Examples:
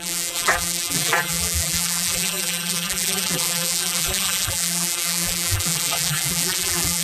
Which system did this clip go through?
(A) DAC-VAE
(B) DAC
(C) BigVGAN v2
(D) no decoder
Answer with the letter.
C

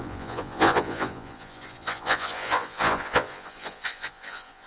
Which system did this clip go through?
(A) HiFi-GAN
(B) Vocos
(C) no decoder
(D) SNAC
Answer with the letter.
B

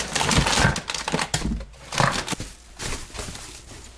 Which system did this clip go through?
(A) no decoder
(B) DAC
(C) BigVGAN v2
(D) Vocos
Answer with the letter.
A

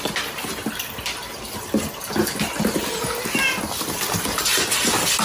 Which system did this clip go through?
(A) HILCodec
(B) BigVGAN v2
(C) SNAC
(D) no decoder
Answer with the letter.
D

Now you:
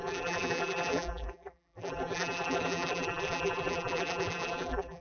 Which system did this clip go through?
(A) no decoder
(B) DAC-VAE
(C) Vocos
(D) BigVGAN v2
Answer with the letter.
D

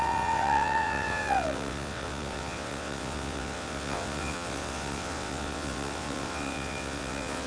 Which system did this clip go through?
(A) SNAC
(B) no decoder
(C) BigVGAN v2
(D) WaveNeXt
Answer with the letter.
D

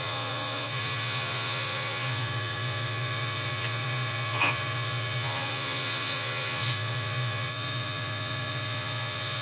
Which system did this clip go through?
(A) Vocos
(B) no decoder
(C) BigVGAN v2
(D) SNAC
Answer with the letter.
A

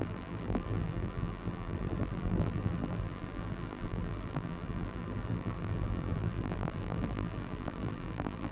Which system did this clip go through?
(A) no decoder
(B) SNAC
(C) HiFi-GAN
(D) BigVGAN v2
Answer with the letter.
D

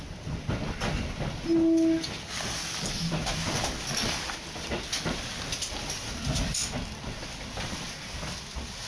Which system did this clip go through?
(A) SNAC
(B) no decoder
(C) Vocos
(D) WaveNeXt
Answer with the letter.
B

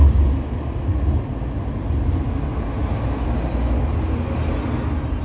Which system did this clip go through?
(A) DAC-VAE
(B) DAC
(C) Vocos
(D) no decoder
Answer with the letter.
D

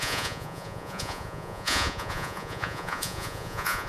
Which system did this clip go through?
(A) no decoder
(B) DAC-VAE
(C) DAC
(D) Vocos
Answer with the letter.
D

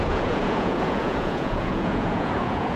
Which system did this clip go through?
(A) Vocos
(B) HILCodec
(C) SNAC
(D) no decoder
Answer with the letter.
A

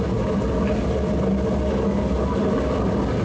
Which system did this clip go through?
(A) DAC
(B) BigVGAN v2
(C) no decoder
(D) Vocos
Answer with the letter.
C